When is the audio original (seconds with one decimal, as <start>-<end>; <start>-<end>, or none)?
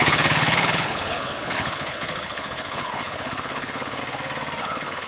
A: 4.0-4.6